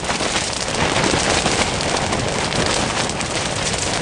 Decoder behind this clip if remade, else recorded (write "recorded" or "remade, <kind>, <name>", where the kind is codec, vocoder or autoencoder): recorded